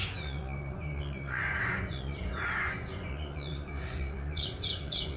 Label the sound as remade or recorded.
remade